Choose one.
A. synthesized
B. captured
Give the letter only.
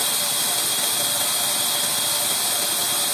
B